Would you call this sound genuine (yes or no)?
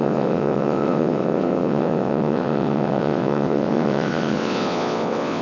no